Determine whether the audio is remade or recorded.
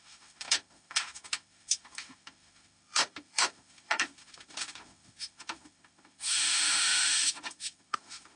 remade